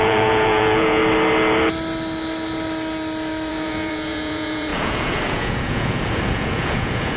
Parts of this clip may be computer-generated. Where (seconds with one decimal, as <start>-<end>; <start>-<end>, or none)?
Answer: 0.0-1.0; 3.5-7.2